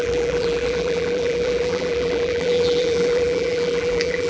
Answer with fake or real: fake